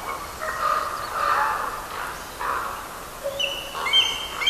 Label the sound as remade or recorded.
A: recorded